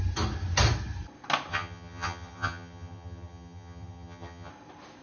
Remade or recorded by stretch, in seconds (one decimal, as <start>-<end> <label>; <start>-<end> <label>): 0.0-1.5 recorded; 1.5-4.5 remade; 4.5-5.0 recorded